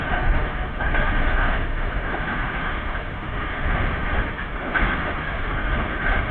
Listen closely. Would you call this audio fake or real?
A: fake